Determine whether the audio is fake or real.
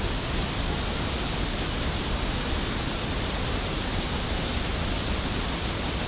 real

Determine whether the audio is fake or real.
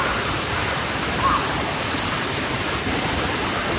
real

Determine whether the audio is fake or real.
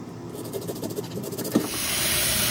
real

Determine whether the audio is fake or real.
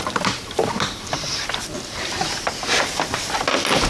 fake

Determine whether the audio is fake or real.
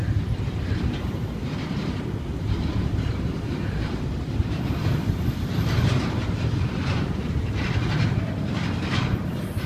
fake